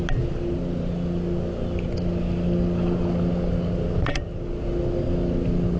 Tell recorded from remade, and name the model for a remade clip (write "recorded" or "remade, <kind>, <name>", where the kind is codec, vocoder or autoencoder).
recorded